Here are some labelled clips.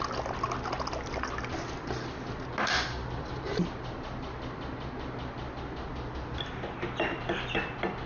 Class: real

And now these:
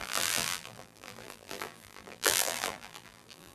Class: fake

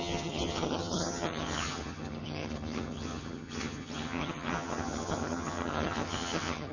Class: fake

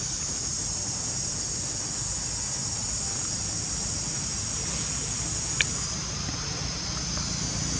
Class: real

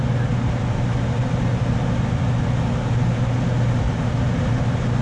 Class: real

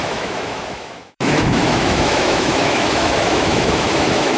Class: fake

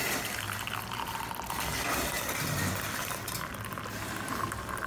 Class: real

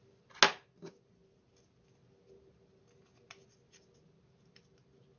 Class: real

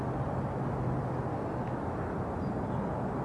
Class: real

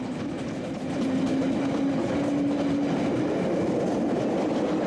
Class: real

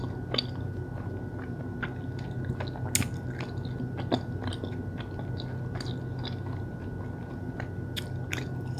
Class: real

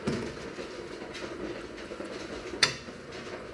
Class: fake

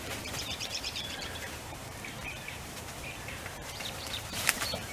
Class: fake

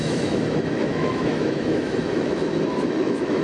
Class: fake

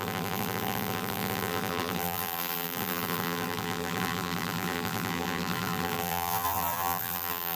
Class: fake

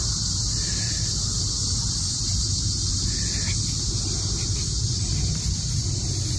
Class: real